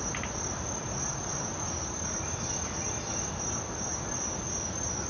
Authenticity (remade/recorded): recorded